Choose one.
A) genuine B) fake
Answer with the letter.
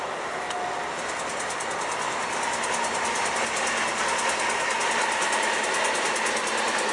A